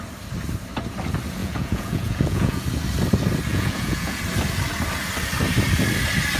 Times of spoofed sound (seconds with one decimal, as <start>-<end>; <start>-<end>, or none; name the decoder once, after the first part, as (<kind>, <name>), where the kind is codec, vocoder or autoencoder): 1.4-2.6 (vocoder, Vocos); 3.5-4.2